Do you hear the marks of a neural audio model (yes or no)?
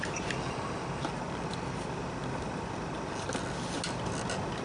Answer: no